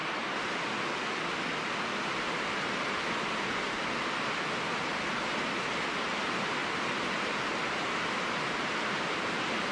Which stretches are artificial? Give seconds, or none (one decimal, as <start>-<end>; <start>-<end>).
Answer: 6.6-9.7

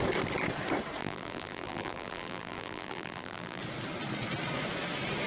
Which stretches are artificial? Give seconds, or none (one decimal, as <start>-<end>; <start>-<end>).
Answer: 1.0-3.6

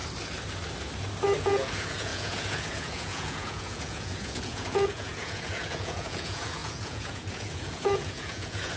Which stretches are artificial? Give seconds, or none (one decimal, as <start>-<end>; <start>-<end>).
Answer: 1.4-8.8